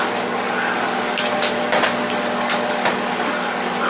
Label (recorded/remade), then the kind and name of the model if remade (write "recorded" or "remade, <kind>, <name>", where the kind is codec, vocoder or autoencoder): remade, codec, DAC